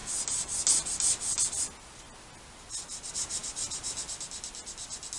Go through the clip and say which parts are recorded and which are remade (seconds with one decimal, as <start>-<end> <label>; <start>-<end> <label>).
0.0-5.2 recorded